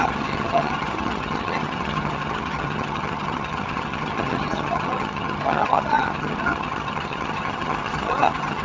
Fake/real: fake